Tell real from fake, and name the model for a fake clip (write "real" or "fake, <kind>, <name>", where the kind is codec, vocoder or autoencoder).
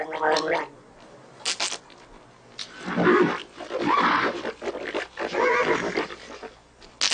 real